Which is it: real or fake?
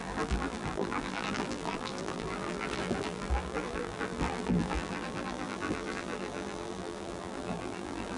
fake